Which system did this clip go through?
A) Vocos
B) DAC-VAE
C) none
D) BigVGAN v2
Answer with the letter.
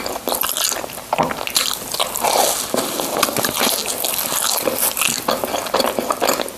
C